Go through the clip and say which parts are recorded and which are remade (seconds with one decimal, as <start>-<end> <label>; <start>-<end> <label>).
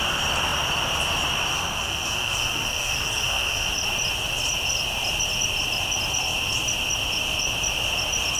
0.0-1.5 recorded; 1.5-3.7 remade; 3.7-8.4 recorded